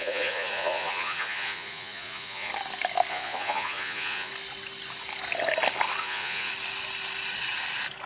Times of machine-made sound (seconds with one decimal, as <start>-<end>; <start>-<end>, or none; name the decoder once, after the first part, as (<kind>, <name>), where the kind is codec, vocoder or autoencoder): 0.0-2.5 (vocoder, Vocos); 3.1-4.3; 6.0-6.5